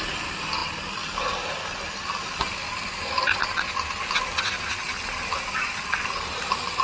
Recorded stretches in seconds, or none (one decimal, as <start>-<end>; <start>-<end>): 0.0-6.8